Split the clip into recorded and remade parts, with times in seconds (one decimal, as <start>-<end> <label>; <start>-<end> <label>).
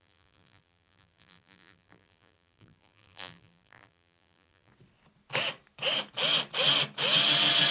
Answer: 0.0-4.7 remade; 4.7-7.7 recorded